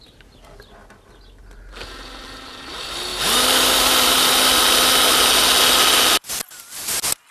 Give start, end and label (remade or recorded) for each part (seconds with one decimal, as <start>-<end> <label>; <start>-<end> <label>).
0.0-3.1 recorded; 3.1-4.6 remade; 4.6-7.3 recorded